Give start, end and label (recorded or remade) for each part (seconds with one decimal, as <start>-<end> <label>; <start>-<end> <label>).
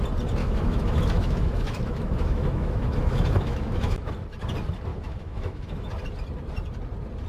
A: 0.0-0.4 recorded; 0.4-4.1 remade; 4.1-4.9 recorded; 4.9-5.9 remade; 5.9-7.3 recorded